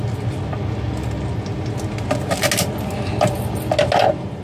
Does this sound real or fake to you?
real